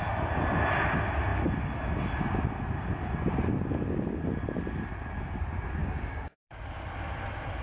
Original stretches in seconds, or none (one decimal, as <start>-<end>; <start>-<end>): 0.0-5.8; 6.6-7.6